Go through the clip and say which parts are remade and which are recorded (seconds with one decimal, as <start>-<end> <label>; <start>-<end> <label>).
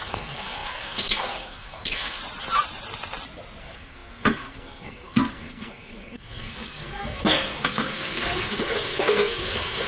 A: 0.0-2.2 remade; 2.2-3.6 recorded; 3.6-9.9 remade